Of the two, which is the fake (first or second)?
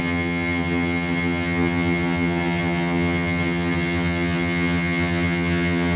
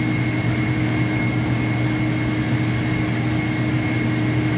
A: first